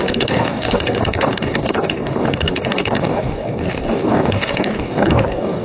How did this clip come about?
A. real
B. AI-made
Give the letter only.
B